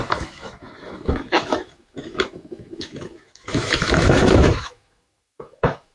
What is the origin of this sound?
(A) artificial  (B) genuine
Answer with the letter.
A